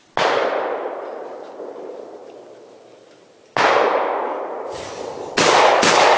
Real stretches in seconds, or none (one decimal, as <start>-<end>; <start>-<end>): 0.0-6.2